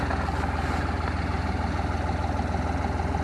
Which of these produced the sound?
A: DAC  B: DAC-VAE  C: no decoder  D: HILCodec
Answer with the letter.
C